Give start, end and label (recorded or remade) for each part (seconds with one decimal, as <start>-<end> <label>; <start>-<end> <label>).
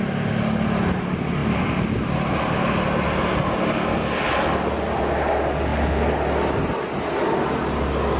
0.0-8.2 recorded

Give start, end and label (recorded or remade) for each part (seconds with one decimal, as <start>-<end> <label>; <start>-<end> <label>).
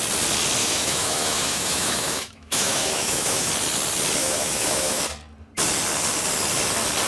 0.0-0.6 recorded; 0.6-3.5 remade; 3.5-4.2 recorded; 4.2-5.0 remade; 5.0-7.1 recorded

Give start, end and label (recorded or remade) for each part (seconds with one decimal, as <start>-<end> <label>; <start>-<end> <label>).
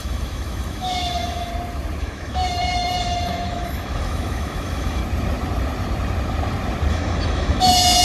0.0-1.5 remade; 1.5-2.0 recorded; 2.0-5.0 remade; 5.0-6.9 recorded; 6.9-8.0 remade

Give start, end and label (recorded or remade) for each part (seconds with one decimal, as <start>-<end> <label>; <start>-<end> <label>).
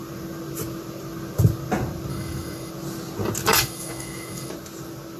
0.0-2.1 recorded; 2.1-2.7 remade; 2.7-3.5 recorded; 3.5-4.5 remade; 4.5-5.2 recorded